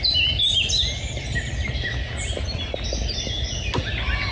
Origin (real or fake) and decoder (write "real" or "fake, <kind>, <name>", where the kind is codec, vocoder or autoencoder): real